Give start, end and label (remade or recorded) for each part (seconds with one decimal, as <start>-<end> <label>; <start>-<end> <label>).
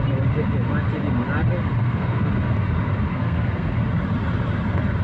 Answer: 0.0-1.8 recorded; 1.8-2.3 remade; 2.3-3.1 recorded; 3.1-3.7 remade; 3.7-5.0 recorded